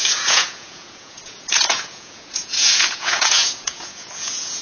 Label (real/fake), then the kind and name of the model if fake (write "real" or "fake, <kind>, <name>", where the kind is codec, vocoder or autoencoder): fake, vocoder, Vocos